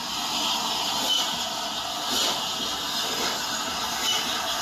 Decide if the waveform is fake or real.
real